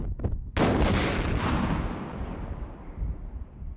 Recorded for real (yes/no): yes